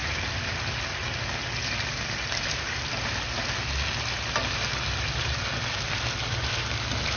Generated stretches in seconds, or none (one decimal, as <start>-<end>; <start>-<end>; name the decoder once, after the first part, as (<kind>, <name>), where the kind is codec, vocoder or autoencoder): 0.0-0.5 (vocoder, BigVGAN v2)